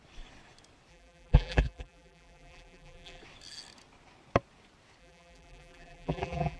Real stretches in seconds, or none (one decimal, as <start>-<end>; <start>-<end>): 0.0-0.9; 3.2-5.0

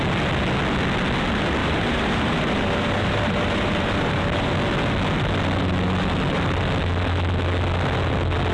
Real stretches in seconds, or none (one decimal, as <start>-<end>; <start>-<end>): 0.0-1.6; 4.5-8.5

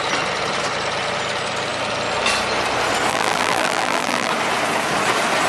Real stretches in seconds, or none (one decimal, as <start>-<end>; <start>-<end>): 0.0-3.1; 4.3-5.5

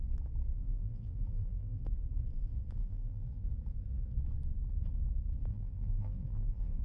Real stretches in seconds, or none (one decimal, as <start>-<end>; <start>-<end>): 0.0-0.6; 1.8-2.8; 3.5-5.5

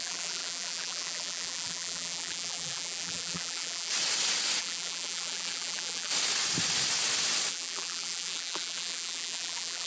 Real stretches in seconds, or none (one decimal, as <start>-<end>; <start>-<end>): 3.9-4.6; 6.1-7.5